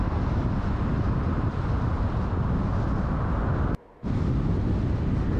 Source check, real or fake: real